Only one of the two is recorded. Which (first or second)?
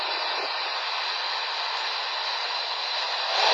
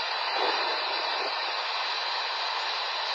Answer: first